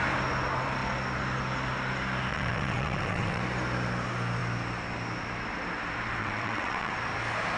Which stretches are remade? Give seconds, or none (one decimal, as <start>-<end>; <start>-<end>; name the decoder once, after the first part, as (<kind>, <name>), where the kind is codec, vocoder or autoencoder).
2.3-3.4 (vocoder, WaveNeXt); 6.2-6.9